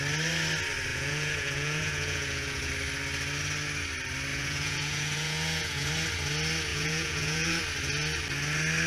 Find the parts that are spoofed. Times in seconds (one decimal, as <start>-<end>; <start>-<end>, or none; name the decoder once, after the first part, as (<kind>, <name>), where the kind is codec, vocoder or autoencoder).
0.9-2.7 (vocoder, Vocos); 4.3-5.9; 6.7-7.6